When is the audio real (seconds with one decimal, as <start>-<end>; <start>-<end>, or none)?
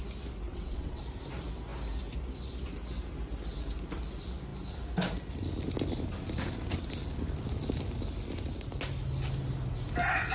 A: 0.0-0.5; 1.0-10.3